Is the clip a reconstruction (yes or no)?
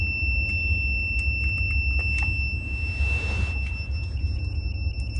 no